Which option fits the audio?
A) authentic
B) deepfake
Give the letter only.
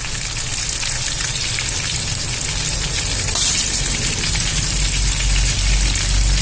A